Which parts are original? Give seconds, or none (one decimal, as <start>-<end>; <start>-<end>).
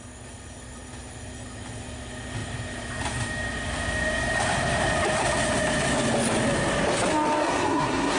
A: 0.0-7.4